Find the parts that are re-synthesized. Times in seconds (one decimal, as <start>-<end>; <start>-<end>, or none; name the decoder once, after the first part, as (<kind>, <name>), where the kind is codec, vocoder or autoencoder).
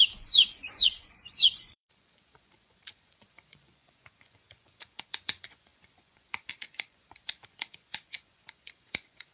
0.0-9.3 (vocoder, Vocos)